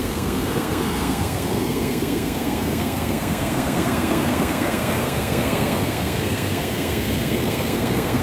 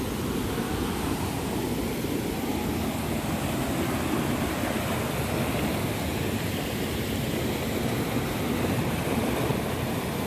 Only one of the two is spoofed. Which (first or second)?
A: first